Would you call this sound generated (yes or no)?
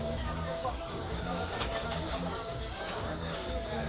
yes